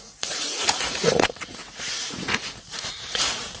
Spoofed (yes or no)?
yes